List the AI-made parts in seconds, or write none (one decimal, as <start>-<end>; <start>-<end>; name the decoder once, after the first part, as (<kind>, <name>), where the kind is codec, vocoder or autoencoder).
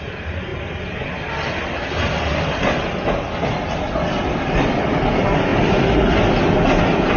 none